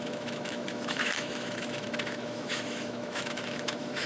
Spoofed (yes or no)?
yes